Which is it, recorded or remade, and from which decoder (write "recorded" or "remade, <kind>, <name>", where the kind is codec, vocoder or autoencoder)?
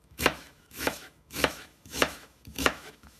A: remade, autoencoder, DAC-VAE